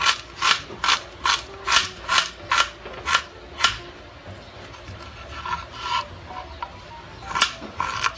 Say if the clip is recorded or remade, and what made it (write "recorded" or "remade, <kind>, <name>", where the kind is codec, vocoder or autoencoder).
recorded